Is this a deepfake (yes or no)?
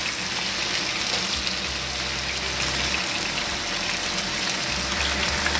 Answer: no